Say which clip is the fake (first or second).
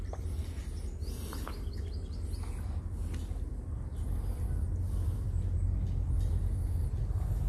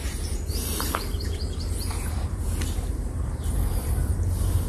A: second